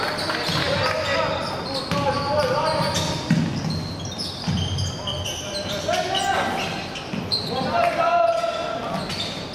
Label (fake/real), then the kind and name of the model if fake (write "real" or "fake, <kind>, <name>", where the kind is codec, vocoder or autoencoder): real